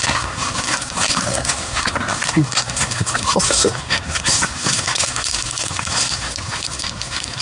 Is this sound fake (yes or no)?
yes